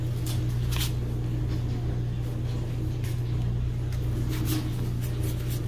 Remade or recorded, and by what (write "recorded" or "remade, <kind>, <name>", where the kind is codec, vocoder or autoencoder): recorded